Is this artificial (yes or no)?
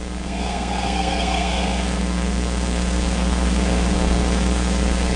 yes